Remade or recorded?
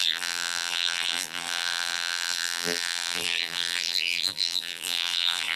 remade